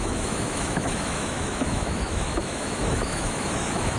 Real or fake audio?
fake